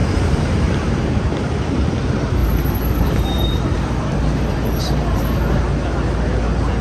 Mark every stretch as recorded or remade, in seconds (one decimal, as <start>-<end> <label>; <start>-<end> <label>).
0.0-0.6 remade; 0.6-2.4 recorded; 2.4-5.2 remade; 5.2-6.8 recorded